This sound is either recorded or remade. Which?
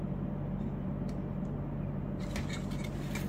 recorded